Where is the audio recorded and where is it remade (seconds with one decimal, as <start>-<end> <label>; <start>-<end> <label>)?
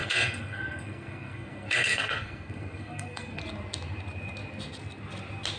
0.0-3.4 remade; 3.4-5.6 recorded